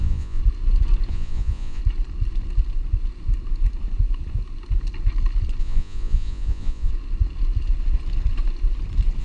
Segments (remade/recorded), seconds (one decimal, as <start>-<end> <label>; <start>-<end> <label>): 0.0-0.4 remade; 0.4-1.1 recorded; 1.1-1.8 remade; 1.8-5.6 recorded; 5.6-6.9 remade; 6.9-9.2 recorded